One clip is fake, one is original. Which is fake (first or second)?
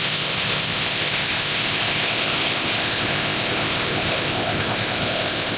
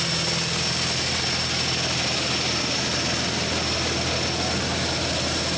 first